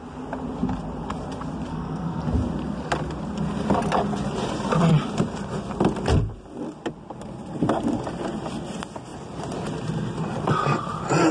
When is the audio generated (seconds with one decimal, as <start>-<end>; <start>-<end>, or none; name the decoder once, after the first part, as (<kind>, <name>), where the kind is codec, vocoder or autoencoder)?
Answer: 1.7-2.2 (codec, SNAC)